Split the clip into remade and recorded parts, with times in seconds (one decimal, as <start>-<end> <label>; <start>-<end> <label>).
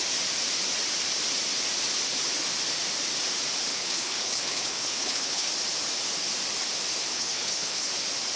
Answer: 0.0-3.7 recorded; 3.7-5.5 remade; 5.5-7.1 recorded; 7.1-7.9 remade; 7.9-8.4 recorded